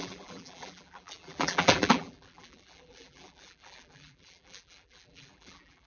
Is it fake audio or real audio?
fake